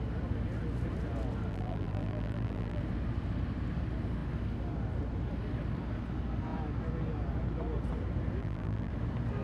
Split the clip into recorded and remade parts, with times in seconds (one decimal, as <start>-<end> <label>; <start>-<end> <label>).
0.0-1.5 recorded; 1.5-2.8 remade; 2.8-8.4 recorded; 8.4-8.9 remade; 8.9-9.4 recorded

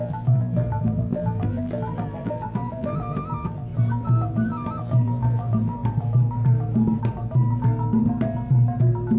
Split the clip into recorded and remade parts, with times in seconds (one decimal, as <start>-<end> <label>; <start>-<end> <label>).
0.0-5.8 remade; 5.8-9.2 recorded

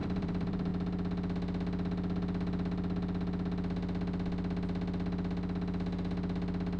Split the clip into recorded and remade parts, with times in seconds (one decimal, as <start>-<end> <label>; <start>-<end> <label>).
0.0-0.7 remade; 0.7-6.8 recorded

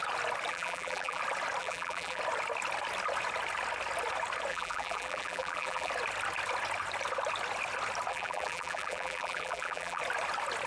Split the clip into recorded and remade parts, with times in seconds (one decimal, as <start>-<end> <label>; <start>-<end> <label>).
0.0-0.5 recorded; 0.5-1.2 remade; 1.2-1.6 recorded; 1.6-2.2 remade; 2.2-4.5 recorded; 4.5-5.9 remade; 5.9-8.1 recorded; 8.1-10.0 remade; 10.0-10.7 recorded

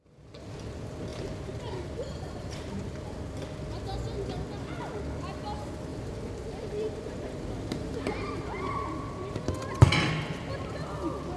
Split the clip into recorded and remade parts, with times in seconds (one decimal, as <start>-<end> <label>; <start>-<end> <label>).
0.0-1.1 recorded; 1.1-3.2 remade; 3.2-5.9 recorded; 5.9-8.9 remade; 8.9-11.4 recorded

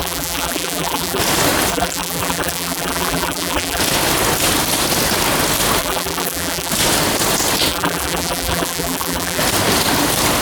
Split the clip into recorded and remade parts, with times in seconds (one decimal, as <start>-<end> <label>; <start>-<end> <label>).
0.0-1.2 remade; 1.2-1.7 recorded; 1.7-3.8 remade; 3.8-5.8 recorded; 5.8-6.7 remade; 6.7-7.7 recorded; 7.7-9.4 remade; 9.4-10.4 recorded

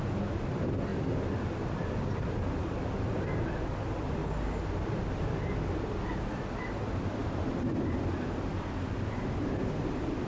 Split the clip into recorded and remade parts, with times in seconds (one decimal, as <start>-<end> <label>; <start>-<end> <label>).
0.0-0.9 remade; 0.9-2.1 recorded; 2.1-4.2 remade; 4.2-4.9 recorded; 4.9-10.3 remade

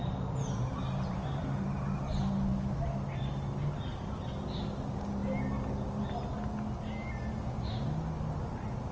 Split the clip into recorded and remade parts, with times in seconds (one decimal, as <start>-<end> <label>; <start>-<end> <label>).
0.0-1.4 remade; 1.4-8.9 recorded